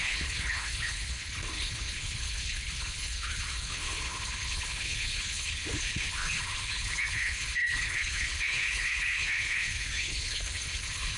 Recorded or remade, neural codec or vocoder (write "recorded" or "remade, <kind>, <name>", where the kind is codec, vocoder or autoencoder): remade, codec, HILCodec